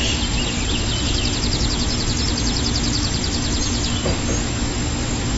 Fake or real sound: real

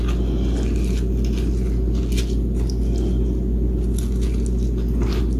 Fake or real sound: real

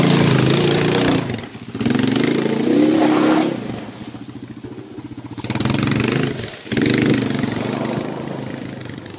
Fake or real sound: real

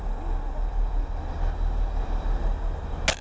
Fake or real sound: real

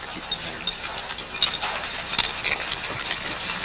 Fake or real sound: fake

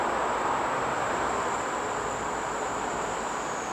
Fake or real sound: fake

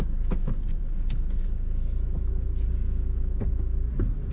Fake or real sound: real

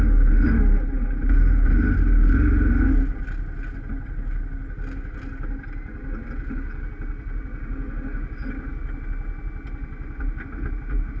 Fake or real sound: real